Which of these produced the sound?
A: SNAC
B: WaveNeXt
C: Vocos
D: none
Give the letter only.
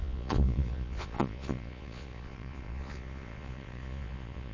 C